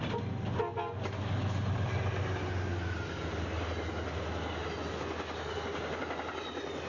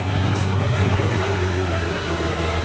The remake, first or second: second